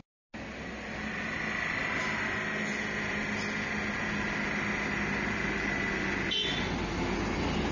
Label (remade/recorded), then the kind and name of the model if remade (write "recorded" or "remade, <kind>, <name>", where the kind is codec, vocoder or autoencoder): recorded